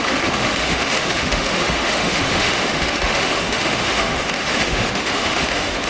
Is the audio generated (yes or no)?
yes